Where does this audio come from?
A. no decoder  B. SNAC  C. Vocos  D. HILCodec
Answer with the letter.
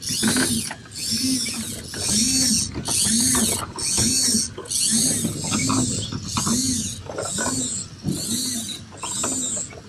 A